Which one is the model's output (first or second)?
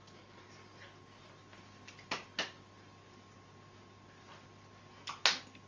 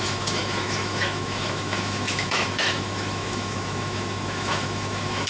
second